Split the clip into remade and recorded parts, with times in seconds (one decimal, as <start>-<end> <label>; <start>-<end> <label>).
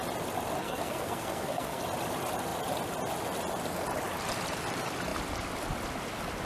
0.0-0.6 recorded; 0.6-1.8 remade; 1.8-6.5 recorded